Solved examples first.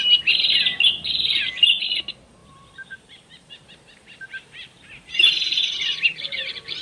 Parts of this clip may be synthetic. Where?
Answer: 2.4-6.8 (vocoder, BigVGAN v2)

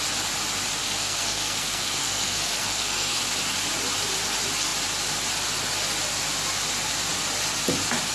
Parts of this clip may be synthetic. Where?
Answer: 0.8-3.2 (codec, SNAC)

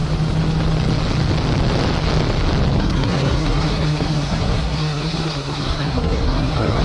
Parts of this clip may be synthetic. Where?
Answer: 2.8-6.8 (codec, SNAC)

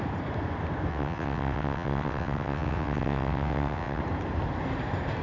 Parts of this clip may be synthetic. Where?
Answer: 0.9-4.0 (vocoder, WaveNeXt)

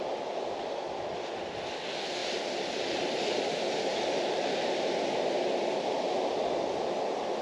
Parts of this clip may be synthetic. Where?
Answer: none